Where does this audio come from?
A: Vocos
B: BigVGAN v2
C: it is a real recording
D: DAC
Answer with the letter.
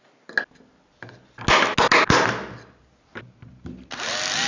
C